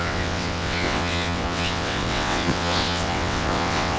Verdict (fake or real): fake